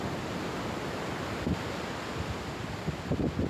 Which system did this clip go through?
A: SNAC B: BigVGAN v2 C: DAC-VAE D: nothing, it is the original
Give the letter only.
D